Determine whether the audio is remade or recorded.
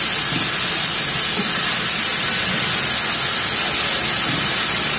recorded